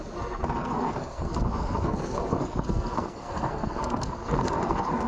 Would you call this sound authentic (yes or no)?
no